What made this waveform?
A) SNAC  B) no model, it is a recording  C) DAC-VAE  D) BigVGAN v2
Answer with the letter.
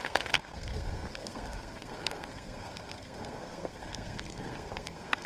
A